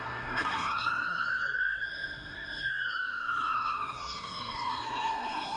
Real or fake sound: fake